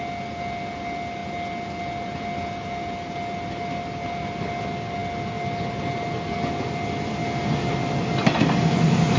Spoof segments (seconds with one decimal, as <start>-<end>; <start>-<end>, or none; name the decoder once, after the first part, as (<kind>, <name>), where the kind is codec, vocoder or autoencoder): none